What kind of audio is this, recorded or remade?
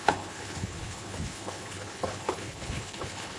remade